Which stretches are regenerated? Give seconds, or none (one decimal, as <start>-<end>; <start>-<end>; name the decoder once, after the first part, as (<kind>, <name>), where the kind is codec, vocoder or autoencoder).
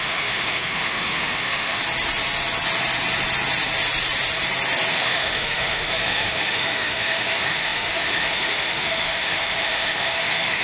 0.0-1.8 (autoencoder, DAC-VAE); 4.9-10.6